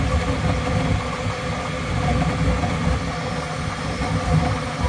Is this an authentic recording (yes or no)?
yes